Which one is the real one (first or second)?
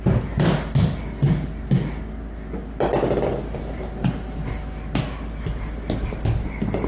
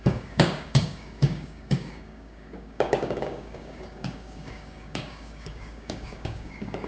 first